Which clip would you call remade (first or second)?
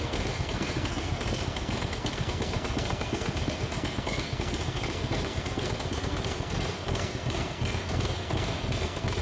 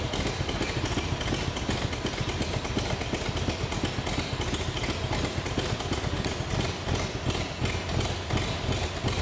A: first